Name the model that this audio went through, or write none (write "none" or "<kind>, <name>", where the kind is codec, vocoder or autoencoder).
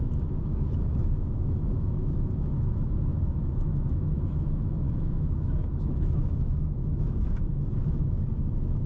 autoencoder, DAC-VAE